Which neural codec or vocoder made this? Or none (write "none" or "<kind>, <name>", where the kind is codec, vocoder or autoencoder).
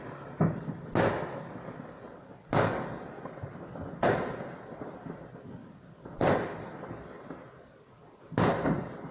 none